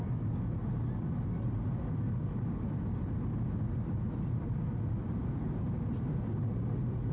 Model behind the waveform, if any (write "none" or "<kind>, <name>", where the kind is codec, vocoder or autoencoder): none